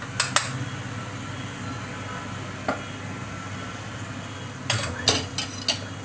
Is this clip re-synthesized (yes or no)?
no